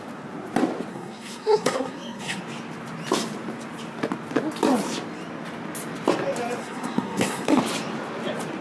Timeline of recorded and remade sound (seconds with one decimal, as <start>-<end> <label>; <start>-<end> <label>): 0.0-0.9 recorded; 0.9-2.4 remade; 2.4-6.6 recorded; 6.6-7.6 remade; 7.6-8.6 recorded